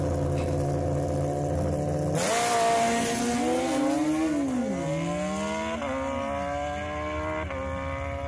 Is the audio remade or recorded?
recorded